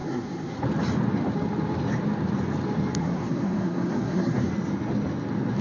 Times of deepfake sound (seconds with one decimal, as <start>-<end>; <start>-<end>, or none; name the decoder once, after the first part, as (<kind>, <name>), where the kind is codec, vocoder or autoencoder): 0.0-0.6 (codec, SNAC); 3.0-4.5